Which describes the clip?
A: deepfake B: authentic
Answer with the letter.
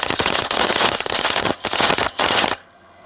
A